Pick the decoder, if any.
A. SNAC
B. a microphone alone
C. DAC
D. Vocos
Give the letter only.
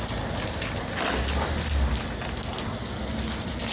B